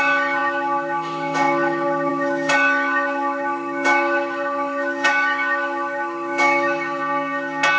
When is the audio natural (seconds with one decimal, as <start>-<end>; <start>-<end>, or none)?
7.0-7.8